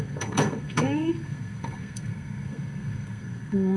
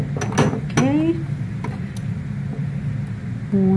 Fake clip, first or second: first